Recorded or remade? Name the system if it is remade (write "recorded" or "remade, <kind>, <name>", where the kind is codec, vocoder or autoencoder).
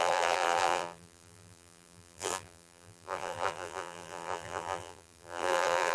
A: remade, vocoder, BigVGAN v2